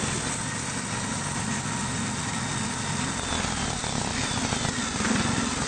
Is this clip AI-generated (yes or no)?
no